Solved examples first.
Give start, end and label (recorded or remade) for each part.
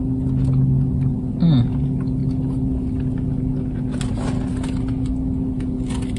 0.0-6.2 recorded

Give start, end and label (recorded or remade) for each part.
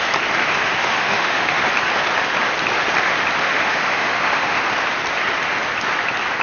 0.0-0.4 recorded; 0.4-1.6 remade; 1.6-3.4 recorded; 3.4-4.6 remade; 4.6-6.4 recorded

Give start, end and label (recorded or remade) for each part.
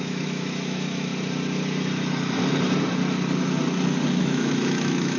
0.0-1.1 remade; 1.1-4.2 recorded; 4.2-5.2 remade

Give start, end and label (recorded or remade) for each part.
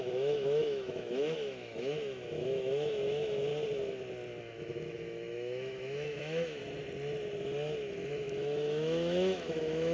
0.0-3.5 remade; 3.5-4.4 recorded; 4.4-6.6 remade; 6.6-8.1 recorded; 8.1-9.9 remade